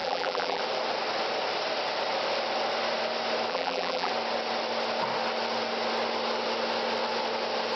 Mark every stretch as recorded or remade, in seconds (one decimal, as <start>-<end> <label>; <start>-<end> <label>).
0.0-0.6 remade; 0.6-3.5 recorded; 3.5-4.1 remade; 4.1-7.8 recorded